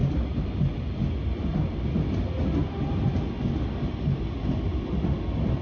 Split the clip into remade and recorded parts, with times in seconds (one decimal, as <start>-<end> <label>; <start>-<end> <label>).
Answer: 0.0-5.6 recorded